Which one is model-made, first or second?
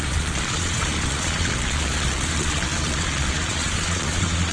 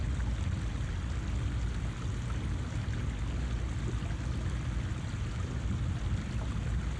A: first